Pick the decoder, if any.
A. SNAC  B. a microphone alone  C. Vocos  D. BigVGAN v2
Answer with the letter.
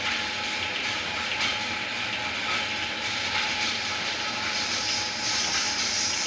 B